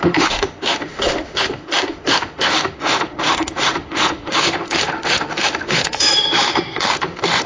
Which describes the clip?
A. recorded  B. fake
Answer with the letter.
B